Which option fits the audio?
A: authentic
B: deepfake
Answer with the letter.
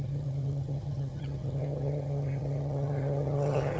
B